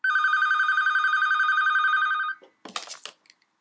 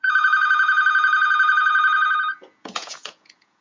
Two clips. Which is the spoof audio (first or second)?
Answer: second